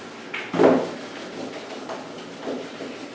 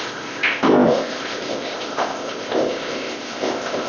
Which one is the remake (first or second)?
second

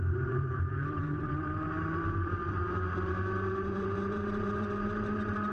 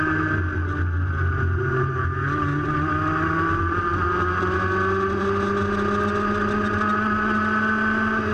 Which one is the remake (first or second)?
first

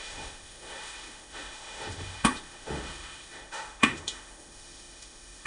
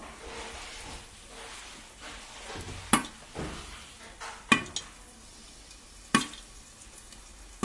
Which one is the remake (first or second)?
first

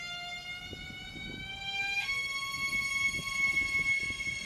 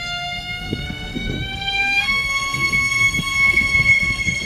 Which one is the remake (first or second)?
second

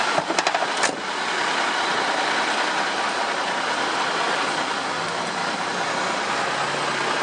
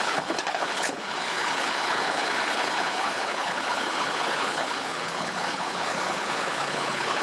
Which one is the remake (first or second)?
second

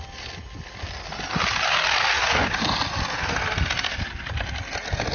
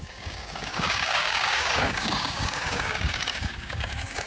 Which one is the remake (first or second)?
second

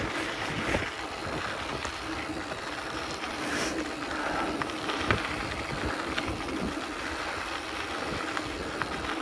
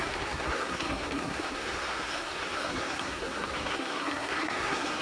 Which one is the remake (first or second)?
second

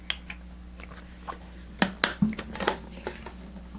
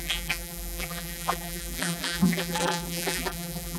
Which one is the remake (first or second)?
second